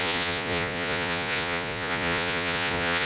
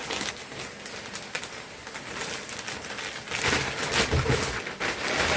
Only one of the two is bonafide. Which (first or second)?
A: second